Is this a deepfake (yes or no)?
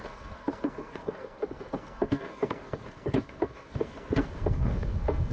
yes